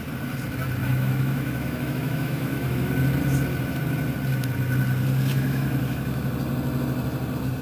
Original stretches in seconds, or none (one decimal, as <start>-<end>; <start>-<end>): 0.0-0.8; 2.9-5.3; 6.3-7.6